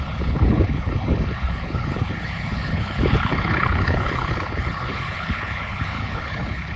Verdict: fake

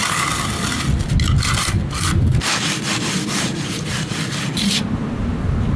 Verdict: real